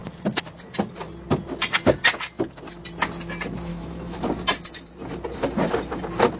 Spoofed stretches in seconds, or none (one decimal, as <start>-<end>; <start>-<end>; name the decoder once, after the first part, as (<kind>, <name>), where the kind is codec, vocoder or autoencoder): 3.7-4.2 (autoencoder, DAC-VAE)